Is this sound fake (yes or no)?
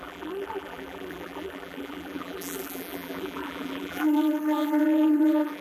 yes